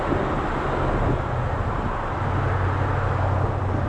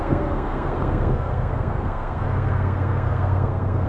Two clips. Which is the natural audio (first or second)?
first